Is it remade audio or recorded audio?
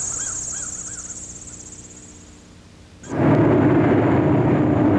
recorded